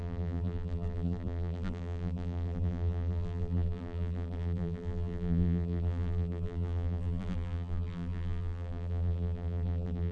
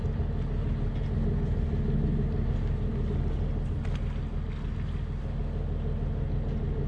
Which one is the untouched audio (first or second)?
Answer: second